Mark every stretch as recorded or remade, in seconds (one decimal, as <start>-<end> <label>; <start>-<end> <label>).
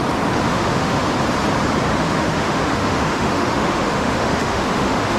0.0-0.5 recorded; 0.5-1.1 remade; 1.1-1.9 recorded; 1.9-5.2 remade